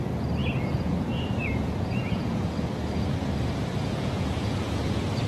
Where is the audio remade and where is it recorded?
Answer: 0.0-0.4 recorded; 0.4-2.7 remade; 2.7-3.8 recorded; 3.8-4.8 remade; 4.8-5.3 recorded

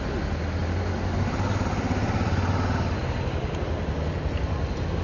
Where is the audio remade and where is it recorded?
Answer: 0.0-5.0 recorded

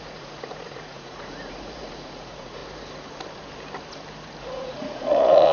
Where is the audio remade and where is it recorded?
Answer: 0.0-2.6 remade; 2.6-4.4 recorded; 4.4-5.5 remade

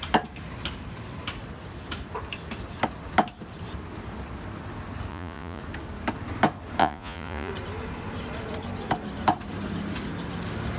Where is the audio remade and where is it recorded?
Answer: 0.0-5.1 recorded; 5.1-5.6 remade; 5.6-6.8 recorded; 6.8-7.5 remade; 7.5-10.8 recorded

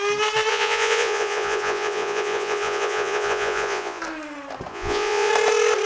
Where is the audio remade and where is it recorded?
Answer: 0.0-0.5 recorded; 0.5-4.0 remade; 4.0-4.7 recorded; 4.7-5.3 remade; 5.3-5.9 recorded

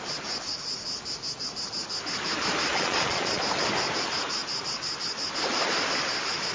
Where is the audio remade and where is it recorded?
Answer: 0.0-2.7 recorded; 2.7-3.4 remade; 3.4-6.5 recorded